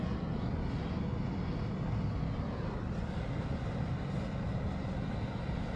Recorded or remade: recorded